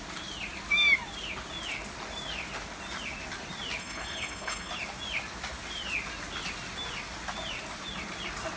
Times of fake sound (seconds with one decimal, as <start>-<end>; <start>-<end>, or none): 3.8-4.7